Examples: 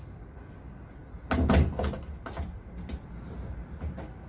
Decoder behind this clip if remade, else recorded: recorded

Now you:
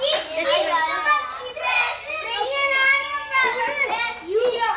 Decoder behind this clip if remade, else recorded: recorded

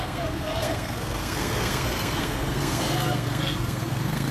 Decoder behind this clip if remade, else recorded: remade, codec, SNAC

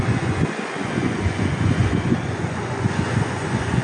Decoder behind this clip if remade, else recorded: remade, vocoder, Vocos